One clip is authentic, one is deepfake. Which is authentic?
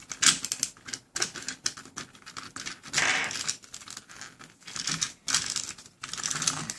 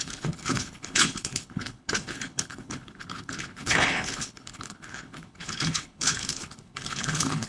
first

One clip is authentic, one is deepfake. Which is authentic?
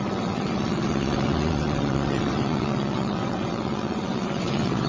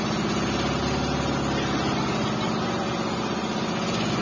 second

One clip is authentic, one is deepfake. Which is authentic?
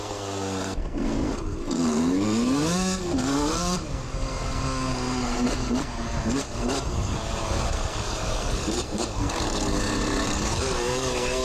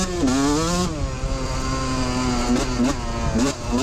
second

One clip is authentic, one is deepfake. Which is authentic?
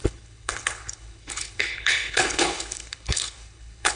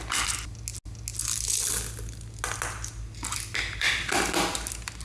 second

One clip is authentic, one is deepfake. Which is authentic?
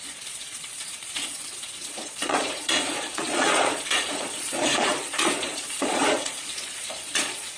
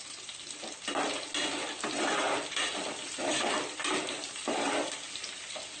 second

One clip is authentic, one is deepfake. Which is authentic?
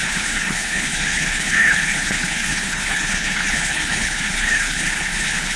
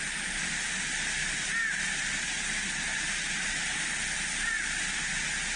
second